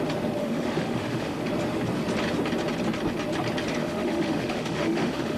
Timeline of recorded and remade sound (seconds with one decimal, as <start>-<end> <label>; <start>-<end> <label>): 0.0-0.4 recorded; 0.4-1.4 remade; 1.4-3.8 recorded; 3.8-5.4 remade